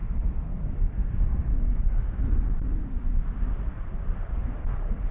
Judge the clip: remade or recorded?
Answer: recorded